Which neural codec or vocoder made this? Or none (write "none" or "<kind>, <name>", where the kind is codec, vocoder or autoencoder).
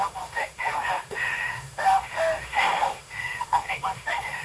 autoencoder, DAC-VAE